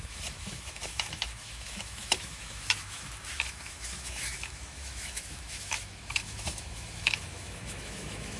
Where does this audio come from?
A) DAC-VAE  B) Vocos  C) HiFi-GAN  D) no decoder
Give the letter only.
A